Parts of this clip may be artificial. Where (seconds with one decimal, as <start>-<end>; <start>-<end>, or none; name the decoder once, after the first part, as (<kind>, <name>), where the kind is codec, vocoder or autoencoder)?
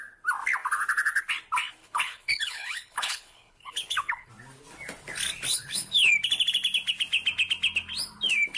1.8-4.3 (codec, HILCodec); 5.5-6.1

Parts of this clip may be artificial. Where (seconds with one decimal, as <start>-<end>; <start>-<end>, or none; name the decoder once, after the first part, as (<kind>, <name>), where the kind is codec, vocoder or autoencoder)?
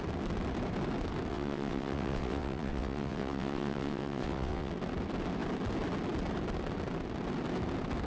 1.3-4.7 (vocoder, WaveNeXt)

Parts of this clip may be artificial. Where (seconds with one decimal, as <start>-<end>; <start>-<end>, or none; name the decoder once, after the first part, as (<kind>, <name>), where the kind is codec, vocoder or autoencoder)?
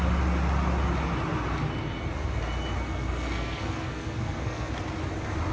2.9-4.7 (codec, SNAC)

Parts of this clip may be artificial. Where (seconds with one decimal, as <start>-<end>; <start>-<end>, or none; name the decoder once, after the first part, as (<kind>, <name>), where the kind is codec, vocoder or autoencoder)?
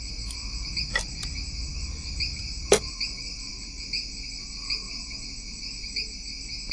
none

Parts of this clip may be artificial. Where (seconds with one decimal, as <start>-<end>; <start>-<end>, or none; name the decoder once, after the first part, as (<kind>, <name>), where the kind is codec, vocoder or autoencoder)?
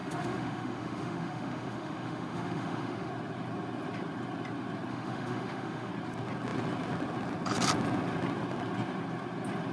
0.0-3.1 (autoencoder, DAC-VAE); 4.9-5.9